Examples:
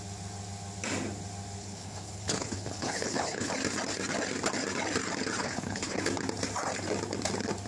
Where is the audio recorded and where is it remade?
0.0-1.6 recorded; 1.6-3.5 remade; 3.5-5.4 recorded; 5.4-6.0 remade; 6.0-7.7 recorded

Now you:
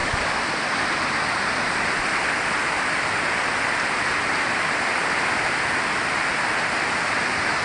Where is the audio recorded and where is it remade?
0.0-7.6 recorded

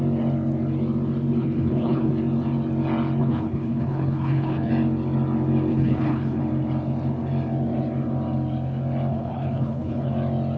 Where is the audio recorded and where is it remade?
0.0-1.4 recorded; 1.4-2.1 remade; 2.1-3.2 recorded; 3.2-4.7 remade; 4.7-5.7 recorded; 5.7-6.4 remade; 6.4-9.1 recorded; 9.1-10.1 remade; 10.1-10.6 recorded

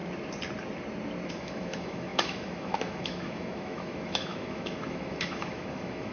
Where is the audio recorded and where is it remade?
0.0-1.3 recorded; 1.3-6.1 remade

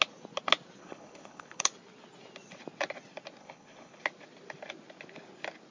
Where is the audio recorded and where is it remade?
0.0-0.8 recorded; 0.8-1.7 remade; 1.7-3.4 recorded; 3.4-4.0 remade; 4.0-5.7 recorded